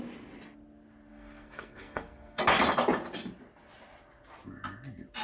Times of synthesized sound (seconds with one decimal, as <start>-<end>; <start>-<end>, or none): 1.1-2.4